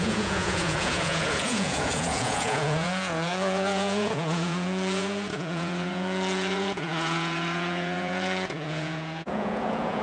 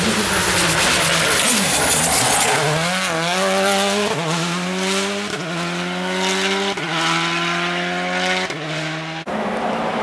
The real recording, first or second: second